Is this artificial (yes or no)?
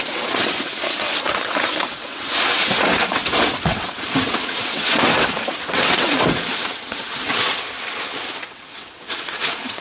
yes